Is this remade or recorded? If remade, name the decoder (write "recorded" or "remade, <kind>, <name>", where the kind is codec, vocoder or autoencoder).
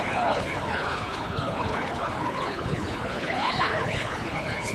remade, codec, HILCodec